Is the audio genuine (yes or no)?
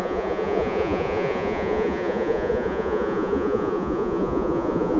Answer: no